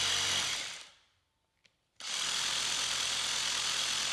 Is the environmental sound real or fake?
real